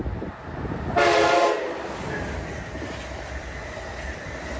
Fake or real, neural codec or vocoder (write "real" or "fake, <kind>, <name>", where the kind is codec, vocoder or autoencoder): real